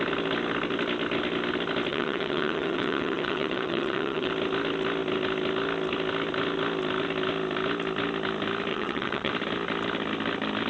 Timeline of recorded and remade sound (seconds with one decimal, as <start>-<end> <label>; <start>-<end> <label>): 0.0-1.9 recorded; 1.9-4.3 remade; 4.3-8.7 recorded; 8.7-9.3 remade; 9.3-10.7 recorded